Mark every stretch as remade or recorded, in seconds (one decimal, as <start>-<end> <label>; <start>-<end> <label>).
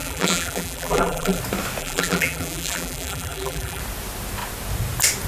0.0-1.4 remade; 1.4-1.8 recorded; 1.8-3.8 remade; 3.8-5.3 recorded